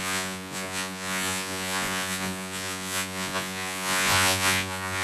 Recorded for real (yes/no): no